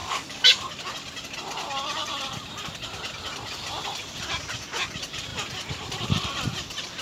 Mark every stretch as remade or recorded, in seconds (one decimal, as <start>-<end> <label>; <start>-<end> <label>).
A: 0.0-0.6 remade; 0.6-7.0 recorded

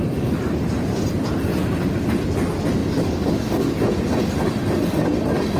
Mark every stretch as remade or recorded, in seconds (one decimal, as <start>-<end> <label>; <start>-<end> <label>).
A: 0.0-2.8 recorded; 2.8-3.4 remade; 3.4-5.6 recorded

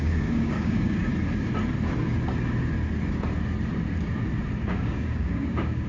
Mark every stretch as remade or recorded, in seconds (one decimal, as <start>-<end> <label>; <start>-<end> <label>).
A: 0.0-1.1 remade; 1.1-4.6 recorded; 4.6-5.9 remade

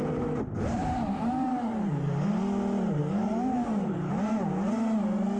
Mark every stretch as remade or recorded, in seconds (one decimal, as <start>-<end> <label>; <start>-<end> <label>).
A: 0.0-1.5 recorded; 1.5-2.3 remade; 2.3-3.0 recorded; 3.0-4.1 remade; 4.1-5.4 recorded

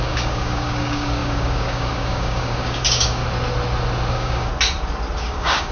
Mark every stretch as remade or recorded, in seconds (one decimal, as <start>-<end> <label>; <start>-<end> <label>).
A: 0.0-3.2 remade; 3.2-4.1 recorded; 4.1-4.5 remade; 4.5-5.2 recorded; 5.2-5.7 remade